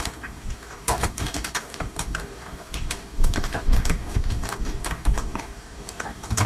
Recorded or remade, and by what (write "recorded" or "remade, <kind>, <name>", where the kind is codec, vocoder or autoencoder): remade, codec, DAC